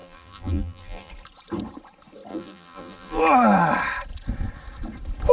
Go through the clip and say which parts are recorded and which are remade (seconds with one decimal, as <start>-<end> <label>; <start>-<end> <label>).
0.0-1.1 remade; 1.1-2.3 recorded; 2.3-3.2 remade; 3.2-5.3 recorded